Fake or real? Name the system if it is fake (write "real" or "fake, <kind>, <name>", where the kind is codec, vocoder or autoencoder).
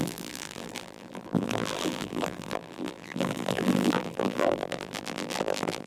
fake, vocoder, BigVGAN v2